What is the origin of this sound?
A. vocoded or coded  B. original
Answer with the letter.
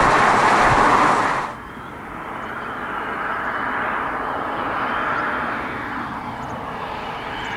B